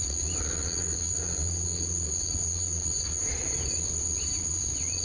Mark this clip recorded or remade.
remade